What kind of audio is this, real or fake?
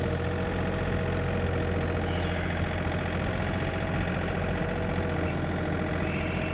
real